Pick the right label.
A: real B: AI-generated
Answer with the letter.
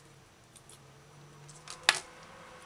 A